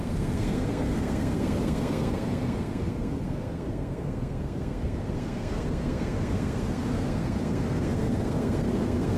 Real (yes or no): no